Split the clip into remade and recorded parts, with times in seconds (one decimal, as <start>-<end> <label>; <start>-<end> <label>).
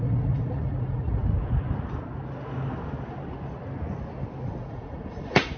0.0-1.2 remade; 1.2-4.6 recorded; 4.6-5.6 remade